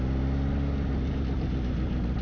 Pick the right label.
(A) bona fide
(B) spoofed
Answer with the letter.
A